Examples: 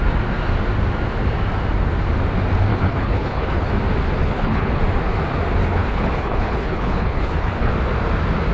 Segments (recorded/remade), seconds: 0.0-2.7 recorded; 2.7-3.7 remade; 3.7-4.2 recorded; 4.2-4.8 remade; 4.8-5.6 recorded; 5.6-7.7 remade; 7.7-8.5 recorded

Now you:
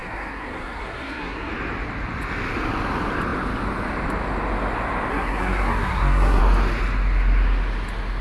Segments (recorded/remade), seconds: 0.0-1.5 remade; 1.5-5.1 recorded; 5.1-6.4 remade; 6.4-8.2 recorded

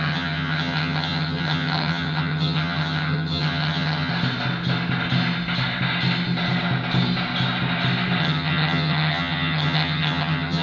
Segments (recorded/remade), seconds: 0.0-4.1 remade; 4.1-8.2 recorded; 8.2-10.6 remade

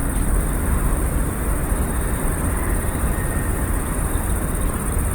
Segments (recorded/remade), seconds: 0.0-1.6 recorded; 1.6-2.7 remade; 2.7-5.1 recorded